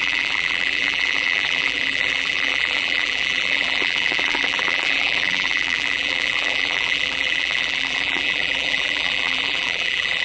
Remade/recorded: remade